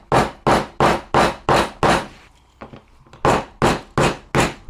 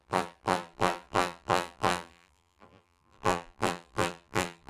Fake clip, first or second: second